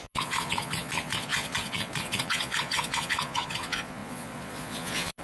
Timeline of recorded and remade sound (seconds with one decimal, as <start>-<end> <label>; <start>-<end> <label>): 0.0-5.2 remade